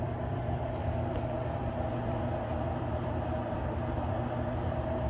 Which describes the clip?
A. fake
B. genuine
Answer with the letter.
A